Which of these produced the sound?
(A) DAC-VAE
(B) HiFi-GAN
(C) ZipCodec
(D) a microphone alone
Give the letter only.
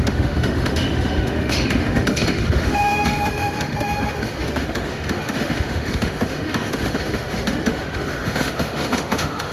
A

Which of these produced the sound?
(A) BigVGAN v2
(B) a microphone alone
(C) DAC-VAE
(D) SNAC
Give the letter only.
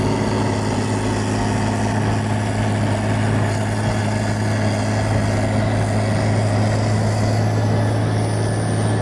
B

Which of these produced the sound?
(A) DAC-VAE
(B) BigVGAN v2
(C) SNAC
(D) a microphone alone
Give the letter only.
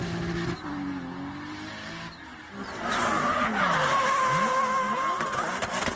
D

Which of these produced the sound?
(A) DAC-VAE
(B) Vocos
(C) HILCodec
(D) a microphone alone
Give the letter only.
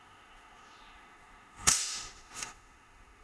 A